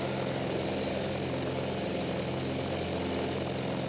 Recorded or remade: recorded